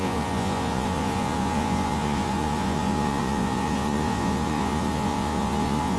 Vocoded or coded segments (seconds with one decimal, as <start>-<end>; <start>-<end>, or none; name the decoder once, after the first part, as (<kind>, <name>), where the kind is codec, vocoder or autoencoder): 0.0-6.0 (vocoder, Vocos)